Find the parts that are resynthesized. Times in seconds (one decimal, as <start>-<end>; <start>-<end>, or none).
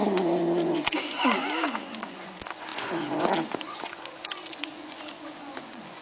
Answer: 0.0-6.0